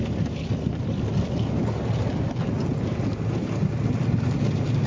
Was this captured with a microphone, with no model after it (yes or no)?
yes